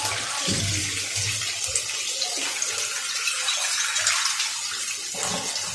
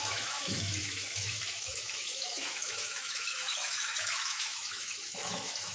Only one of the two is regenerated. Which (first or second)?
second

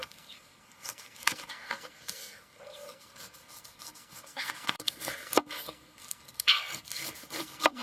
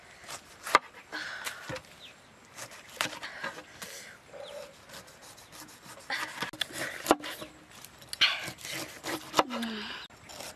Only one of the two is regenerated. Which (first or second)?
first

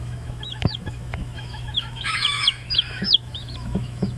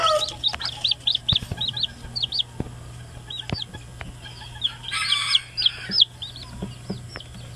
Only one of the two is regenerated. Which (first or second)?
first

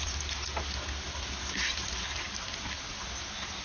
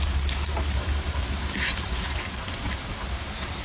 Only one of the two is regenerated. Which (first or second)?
second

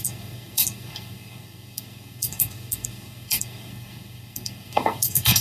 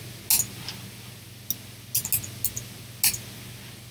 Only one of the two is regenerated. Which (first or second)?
first